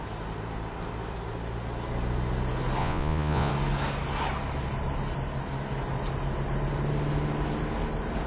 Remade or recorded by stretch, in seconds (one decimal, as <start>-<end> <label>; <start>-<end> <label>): 0.0-2.8 recorded; 2.8-3.5 remade; 3.5-8.3 recorded